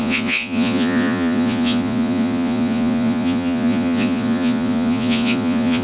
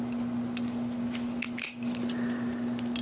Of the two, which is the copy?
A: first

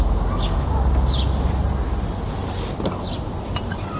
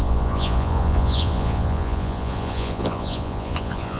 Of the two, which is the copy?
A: second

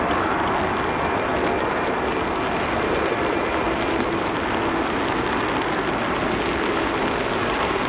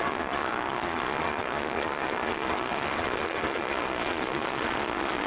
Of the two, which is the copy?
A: second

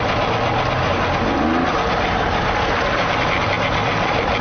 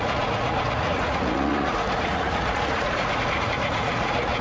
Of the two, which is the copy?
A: second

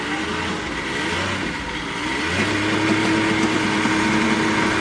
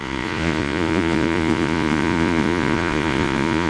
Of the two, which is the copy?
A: second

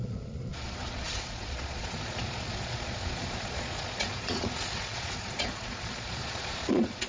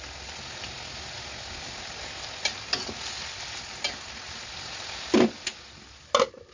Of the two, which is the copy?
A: first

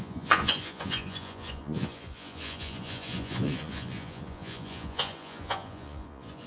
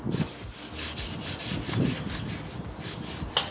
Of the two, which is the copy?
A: first